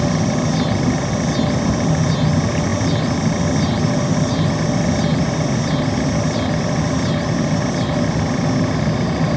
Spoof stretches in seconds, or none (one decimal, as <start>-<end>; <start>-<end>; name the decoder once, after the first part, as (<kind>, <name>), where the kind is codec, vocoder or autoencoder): none